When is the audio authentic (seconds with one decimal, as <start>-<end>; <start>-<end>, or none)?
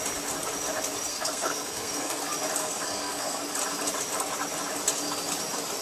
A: 0.0-1.1; 2.2-2.6; 3.4-5.8